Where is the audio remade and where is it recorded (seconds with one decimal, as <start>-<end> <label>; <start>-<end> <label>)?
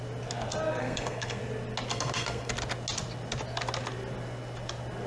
0.0-0.8 recorded; 0.8-1.4 remade; 1.4-1.9 recorded; 1.9-2.5 remade; 2.5-5.1 recorded